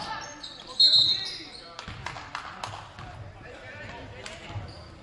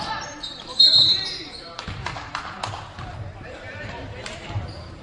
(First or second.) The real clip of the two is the first